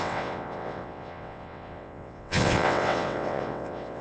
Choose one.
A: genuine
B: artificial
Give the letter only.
B